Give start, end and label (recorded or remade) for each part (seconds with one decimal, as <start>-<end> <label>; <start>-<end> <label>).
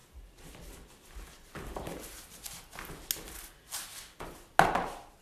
0.0-5.2 recorded